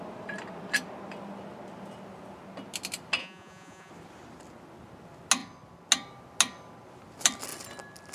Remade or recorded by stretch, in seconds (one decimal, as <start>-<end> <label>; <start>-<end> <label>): 0.0-3.2 recorded; 3.2-3.9 remade; 3.9-8.1 recorded